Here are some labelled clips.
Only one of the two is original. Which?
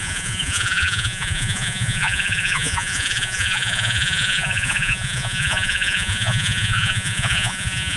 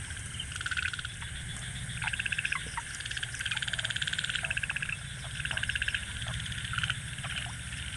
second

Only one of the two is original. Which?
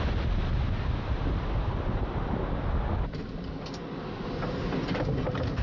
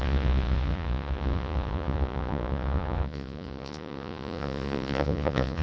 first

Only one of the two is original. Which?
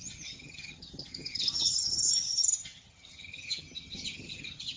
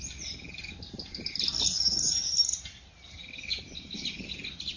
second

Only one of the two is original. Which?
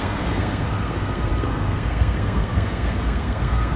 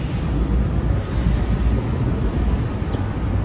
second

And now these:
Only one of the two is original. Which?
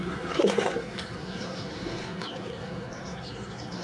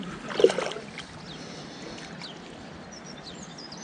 second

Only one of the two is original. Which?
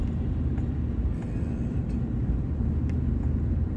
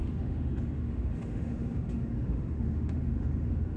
first